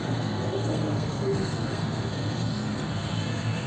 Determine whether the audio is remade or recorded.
remade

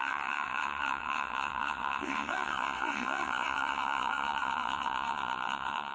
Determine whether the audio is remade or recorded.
remade